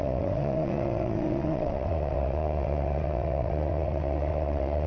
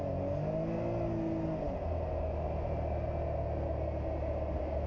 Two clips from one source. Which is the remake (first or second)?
first